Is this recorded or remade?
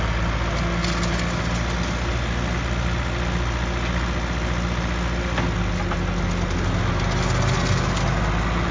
recorded